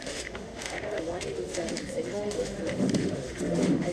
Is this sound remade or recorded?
remade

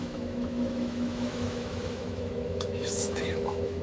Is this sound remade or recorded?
remade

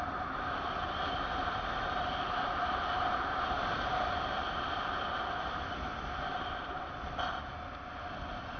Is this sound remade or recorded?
recorded